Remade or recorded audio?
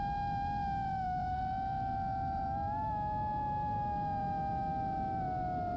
recorded